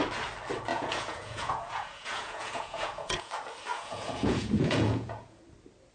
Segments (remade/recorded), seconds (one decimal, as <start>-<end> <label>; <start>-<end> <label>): 0.0-0.7 recorded; 0.7-3.3 remade; 3.3-3.7 recorded; 3.7-5.4 remade; 5.4-5.9 recorded